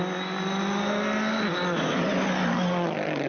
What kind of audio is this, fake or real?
real